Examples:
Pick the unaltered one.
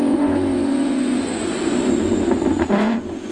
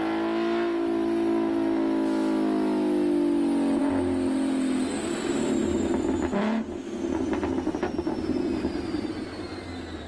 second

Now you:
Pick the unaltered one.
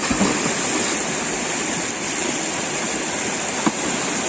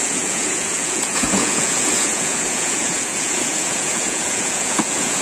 first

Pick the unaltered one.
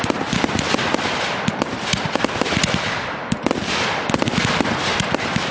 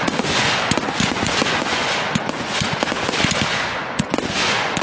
first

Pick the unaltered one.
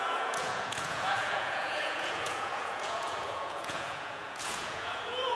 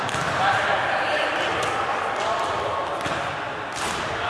second